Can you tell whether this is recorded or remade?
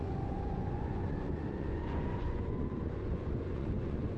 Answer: remade